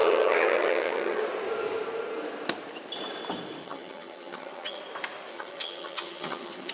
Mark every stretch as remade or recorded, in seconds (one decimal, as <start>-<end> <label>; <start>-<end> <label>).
0.0-1.2 remade; 1.2-3.6 recorded; 3.6-4.8 remade; 4.8-5.3 recorded; 5.3-6.7 remade